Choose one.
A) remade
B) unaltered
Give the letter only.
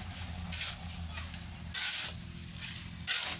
B